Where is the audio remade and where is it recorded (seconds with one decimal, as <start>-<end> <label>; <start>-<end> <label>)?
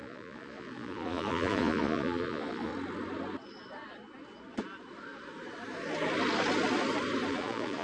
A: 0.0-2.7 remade; 2.7-7.3 recorded; 7.3-7.8 remade